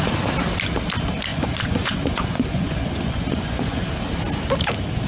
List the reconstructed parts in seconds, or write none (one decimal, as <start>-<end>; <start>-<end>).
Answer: 1.3-3.8